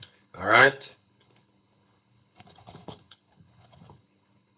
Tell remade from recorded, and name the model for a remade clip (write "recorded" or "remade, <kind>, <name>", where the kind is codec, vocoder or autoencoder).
remade, codec, HILCodec